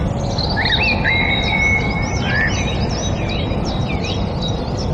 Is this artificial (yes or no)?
no